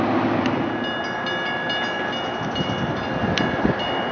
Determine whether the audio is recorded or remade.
recorded